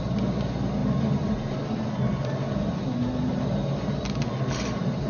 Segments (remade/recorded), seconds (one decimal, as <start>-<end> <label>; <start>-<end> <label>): 0.0-5.1 recorded